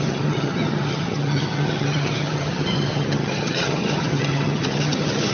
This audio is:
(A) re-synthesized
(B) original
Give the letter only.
A